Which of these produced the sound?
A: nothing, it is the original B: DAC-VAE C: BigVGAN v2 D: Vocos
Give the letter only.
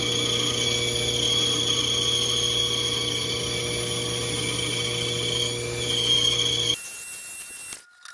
A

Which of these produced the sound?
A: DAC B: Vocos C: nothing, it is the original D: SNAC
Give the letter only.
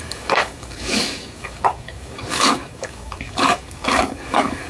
A